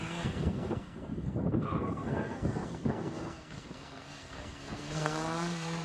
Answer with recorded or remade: remade